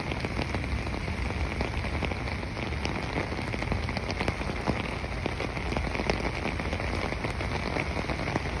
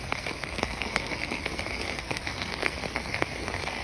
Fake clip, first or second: second